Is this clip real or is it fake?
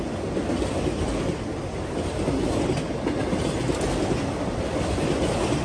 real